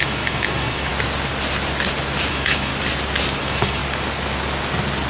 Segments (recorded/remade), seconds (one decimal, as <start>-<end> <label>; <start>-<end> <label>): 0.0-0.9 remade; 0.9-2.3 recorded; 2.3-2.7 remade; 2.7-3.4 recorded; 3.4-3.8 remade; 3.8-5.1 recorded